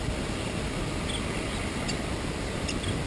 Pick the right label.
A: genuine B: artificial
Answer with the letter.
A